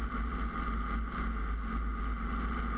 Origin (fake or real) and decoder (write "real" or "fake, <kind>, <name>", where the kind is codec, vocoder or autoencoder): real